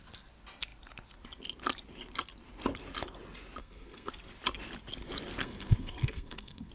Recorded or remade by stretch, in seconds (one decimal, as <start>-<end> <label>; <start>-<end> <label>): 0.0-3.6 recorded; 3.6-4.1 remade; 4.1-5.4 recorded; 5.4-6.7 remade